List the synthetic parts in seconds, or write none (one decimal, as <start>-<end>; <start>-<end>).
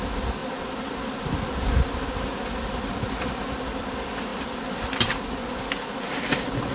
none